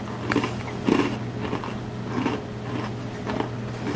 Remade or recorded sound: recorded